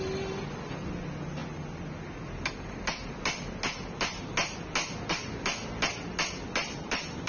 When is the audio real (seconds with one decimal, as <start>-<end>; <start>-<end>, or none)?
0.0-7.3